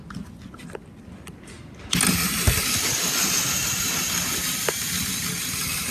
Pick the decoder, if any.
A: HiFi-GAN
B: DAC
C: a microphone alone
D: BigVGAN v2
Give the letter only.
C